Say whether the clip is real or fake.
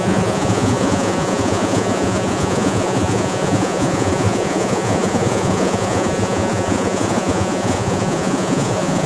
fake